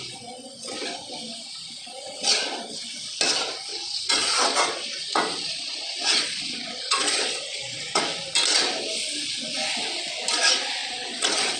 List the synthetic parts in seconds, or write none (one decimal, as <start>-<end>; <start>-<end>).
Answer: 3.7-8.0; 10.8-11.6